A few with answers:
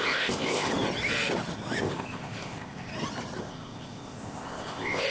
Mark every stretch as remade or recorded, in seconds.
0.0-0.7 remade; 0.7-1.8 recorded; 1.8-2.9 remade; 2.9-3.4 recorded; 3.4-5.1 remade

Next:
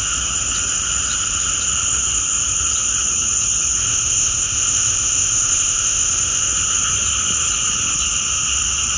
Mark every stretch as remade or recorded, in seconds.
0.0-3.8 recorded; 3.8-6.4 remade; 6.4-9.0 recorded

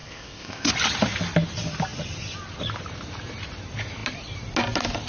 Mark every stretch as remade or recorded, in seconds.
0.0-0.7 remade; 0.7-5.1 recorded